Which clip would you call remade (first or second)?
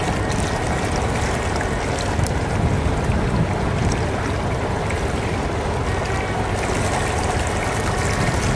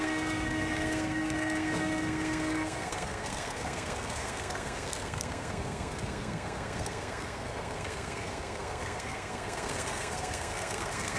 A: second